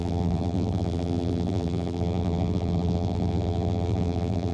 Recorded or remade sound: remade